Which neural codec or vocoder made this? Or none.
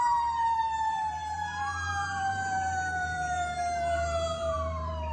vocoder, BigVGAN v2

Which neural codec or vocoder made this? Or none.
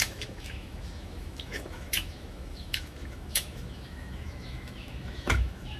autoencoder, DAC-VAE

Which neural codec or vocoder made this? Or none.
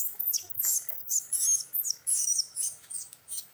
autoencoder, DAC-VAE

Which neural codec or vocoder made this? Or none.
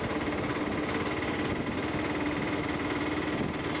none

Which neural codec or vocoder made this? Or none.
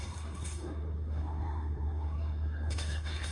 codec, SNAC